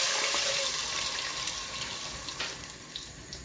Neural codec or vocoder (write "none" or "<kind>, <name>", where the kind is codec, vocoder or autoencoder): none